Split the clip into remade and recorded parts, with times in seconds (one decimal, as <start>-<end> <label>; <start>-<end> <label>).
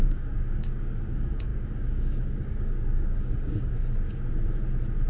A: 0.0-3.8 remade; 3.8-5.1 recorded